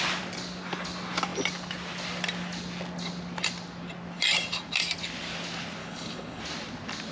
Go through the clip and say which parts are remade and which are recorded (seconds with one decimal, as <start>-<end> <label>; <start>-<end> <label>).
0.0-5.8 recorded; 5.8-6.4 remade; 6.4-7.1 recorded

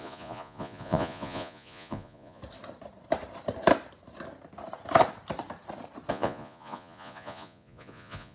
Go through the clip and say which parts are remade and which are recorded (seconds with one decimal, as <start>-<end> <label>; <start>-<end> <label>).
0.0-2.4 remade; 2.4-6.1 recorded; 6.1-8.3 remade

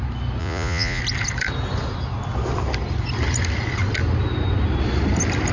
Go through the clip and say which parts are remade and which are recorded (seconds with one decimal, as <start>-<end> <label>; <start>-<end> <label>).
0.0-0.4 recorded; 0.4-1.0 remade; 1.0-5.5 recorded